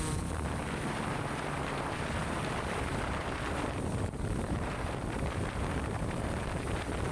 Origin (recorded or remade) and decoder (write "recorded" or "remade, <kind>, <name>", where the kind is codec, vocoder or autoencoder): remade, vocoder, BigVGAN v2